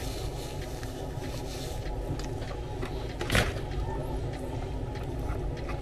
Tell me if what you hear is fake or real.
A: real